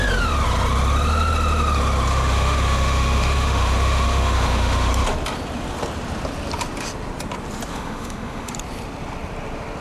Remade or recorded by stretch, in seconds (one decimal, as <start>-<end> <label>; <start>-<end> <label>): 0.0-2.1 recorded; 2.1-4.9 remade; 4.9-7.7 recorded; 7.7-8.5 remade; 8.5-9.8 recorded